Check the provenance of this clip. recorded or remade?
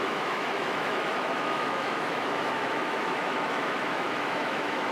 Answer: remade